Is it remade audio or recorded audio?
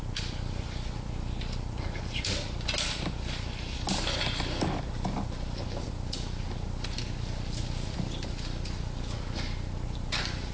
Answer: recorded